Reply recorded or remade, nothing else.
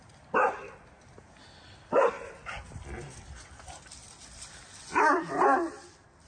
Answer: recorded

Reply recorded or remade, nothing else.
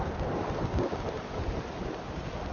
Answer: recorded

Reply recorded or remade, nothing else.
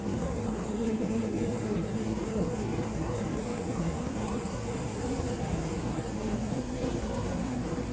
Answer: remade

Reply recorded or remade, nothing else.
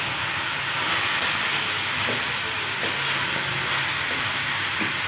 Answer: recorded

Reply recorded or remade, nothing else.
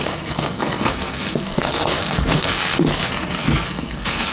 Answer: remade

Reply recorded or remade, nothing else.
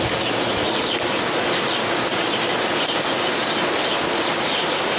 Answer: recorded